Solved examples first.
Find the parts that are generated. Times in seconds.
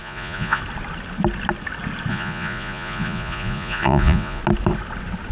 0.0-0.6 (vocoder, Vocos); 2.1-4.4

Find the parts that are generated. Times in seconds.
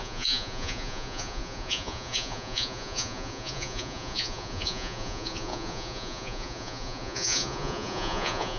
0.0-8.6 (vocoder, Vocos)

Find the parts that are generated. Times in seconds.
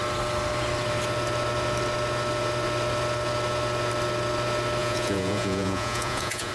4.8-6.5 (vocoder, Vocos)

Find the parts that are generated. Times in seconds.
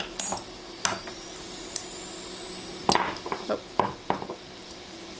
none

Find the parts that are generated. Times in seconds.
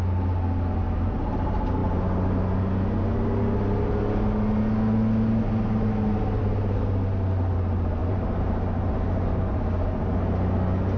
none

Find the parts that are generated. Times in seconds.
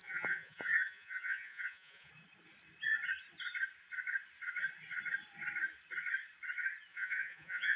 0.0-2.1 (vocoder, Vocos); 6.9-7.8